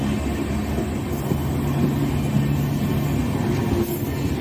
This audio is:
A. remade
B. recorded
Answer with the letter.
B